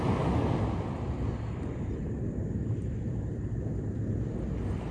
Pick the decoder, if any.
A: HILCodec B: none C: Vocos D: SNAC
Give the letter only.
B